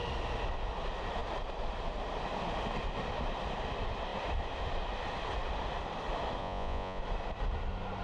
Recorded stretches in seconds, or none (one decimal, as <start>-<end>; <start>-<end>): 0.0-6.4; 7.0-8.0